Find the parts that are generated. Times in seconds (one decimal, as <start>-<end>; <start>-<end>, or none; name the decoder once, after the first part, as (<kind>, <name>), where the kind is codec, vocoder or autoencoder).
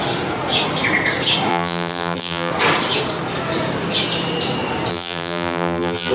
1.5-2.5 (vocoder, BigVGAN v2); 4.9-6.1